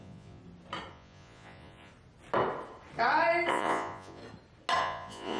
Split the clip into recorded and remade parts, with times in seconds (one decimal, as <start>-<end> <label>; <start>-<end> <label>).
0.0-0.4 remade; 0.4-0.9 recorded; 0.9-1.9 remade; 1.9-3.5 recorded; 3.5-4.2 remade; 4.2-4.8 recorded; 4.8-5.4 remade